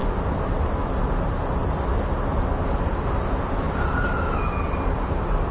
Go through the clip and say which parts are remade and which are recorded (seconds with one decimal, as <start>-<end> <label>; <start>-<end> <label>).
0.0-5.5 recorded